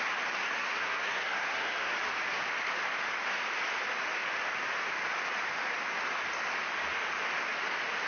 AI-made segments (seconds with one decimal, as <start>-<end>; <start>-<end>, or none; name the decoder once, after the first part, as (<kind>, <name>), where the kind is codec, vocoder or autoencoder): 0.5-1.9 (codec, SNAC)